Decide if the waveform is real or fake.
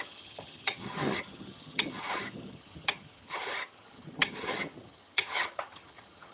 fake